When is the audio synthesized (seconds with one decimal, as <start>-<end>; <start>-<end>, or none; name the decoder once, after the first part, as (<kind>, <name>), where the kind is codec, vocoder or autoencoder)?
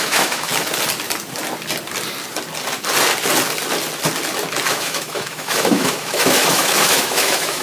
0.0-0.5 (autoencoder, DAC-VAE); 4.7-7.6